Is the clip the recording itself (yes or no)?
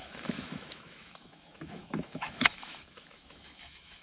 no